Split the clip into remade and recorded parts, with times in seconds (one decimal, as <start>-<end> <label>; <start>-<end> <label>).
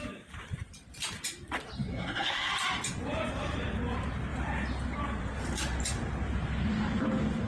0.0-1.9 recorded; 1.9-2.5 remade; 2.5-7.5 recorded